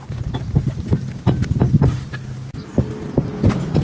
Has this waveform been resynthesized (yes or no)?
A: no